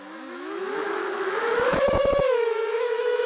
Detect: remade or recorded remade